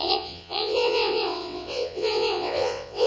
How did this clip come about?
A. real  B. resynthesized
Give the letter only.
B